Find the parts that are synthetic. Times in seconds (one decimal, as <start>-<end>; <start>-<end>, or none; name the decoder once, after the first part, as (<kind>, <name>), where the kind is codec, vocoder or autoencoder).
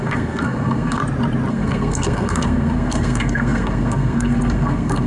0.0-1.0 (codec, SNAC); 1.5-5.1